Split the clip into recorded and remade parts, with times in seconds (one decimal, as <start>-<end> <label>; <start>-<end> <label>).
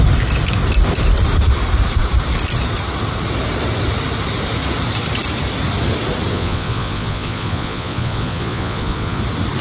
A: 0.0-6.3 recorded; 6.3-9.2 remade; 9.2-9.6 recorded